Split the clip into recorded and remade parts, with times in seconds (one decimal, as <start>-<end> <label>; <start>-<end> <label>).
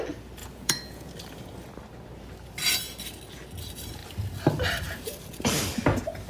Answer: 0.0-0.4 recorded; 0.4-1.1 remade; 1.1-6.3 recorded